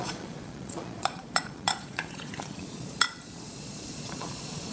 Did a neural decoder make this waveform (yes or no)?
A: yes